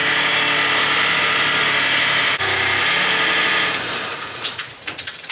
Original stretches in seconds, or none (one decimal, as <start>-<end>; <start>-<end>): 0.0-4.1